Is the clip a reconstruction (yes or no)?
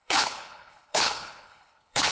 yes